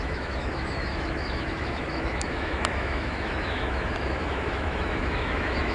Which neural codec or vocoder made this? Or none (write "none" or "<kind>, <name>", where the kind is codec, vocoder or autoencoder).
autoencoder, DAC-VAE